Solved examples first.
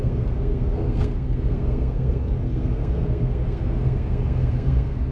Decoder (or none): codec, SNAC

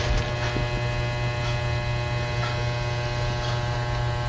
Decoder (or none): none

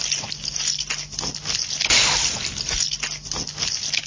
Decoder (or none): none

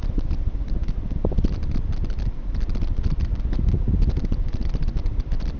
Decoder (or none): vocoder, BigVGAN v2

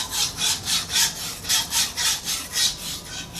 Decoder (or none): vocoder, BigVGAN v2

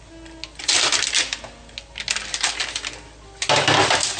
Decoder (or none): none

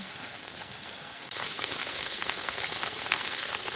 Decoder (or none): codec, SNAC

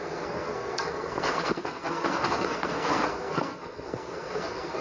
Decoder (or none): codec, SNAC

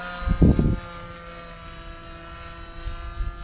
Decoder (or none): none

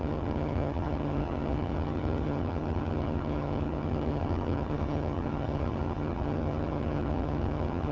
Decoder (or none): vocoder, HiFi-GAN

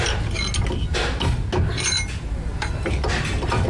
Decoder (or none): none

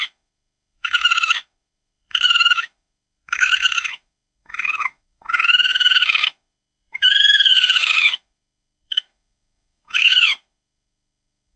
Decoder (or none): autoencoder, DAC-VAE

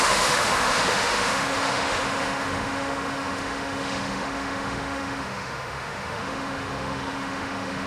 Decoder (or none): autoencoder, DAC-VAE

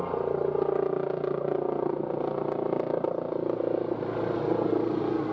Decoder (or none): none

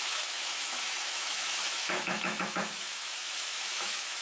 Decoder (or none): autoencoder, DAC-VAE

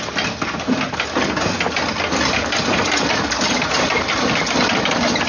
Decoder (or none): none